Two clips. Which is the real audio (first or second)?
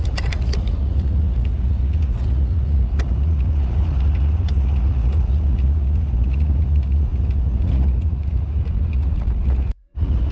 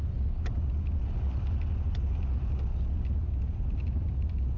second